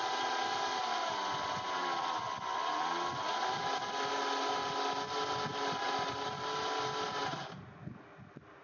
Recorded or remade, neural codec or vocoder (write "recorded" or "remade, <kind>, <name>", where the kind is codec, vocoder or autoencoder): recorded